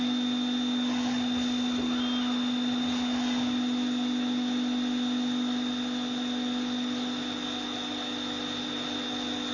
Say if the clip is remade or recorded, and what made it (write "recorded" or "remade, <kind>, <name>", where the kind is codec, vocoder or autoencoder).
recorded